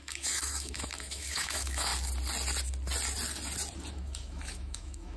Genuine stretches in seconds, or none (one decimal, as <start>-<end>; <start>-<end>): 1.9-3.9